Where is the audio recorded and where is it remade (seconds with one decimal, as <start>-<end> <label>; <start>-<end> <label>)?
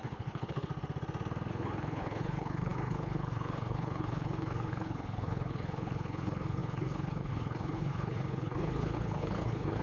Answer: 0.0-0.7 remade; 0.7-1.5 recorded; 1.5-9.8 remade